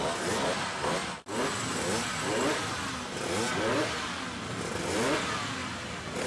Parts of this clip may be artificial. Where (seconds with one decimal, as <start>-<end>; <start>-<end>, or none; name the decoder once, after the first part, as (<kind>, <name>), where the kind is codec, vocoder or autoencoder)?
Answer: 5.6-6.3 (vocoder, BigVGAN v2)